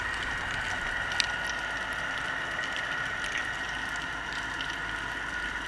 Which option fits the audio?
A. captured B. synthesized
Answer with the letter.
A